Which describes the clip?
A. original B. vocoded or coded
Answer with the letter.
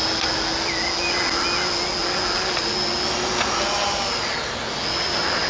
A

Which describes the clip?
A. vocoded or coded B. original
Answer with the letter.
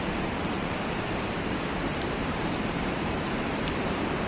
A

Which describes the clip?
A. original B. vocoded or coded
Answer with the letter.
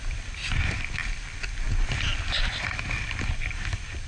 A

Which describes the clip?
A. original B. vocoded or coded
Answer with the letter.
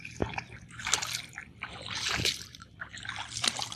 B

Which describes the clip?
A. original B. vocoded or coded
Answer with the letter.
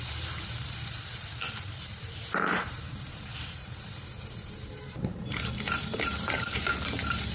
B